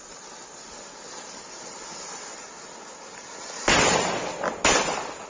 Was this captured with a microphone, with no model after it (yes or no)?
yes